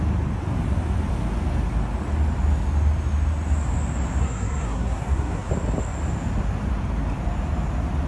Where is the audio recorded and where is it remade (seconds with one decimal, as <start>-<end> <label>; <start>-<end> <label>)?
0.0-4.2 recorded; 4.2-5.5 remade; 5.5-8.1 recorded